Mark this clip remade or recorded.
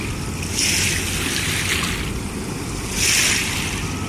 recorded